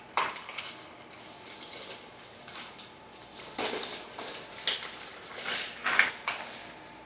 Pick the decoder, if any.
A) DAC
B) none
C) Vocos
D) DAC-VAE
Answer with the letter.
B